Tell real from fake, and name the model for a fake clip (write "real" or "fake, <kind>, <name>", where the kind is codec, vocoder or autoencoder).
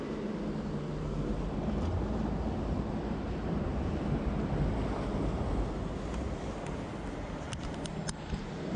real